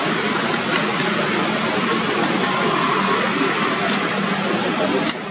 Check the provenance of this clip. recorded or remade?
recorded